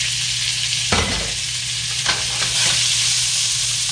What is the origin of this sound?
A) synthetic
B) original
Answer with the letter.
B